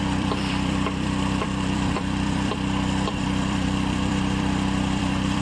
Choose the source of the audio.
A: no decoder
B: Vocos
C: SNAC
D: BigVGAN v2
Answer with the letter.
D